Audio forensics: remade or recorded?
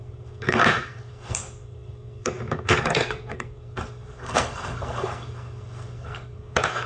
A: remade